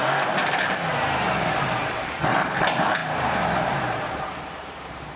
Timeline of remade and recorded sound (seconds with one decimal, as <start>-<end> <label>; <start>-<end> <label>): 0.0-0.4 remade; 0.4-0.9 recorded; 0.9-5.2 remade